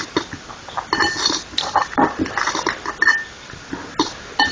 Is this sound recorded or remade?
recorded